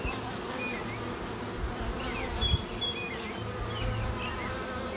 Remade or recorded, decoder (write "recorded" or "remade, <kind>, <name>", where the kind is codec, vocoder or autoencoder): recorded